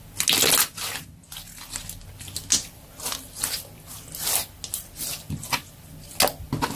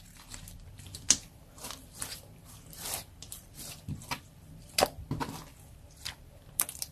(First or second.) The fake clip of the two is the second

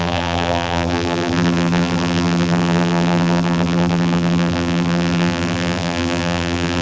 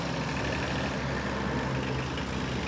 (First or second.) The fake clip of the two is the first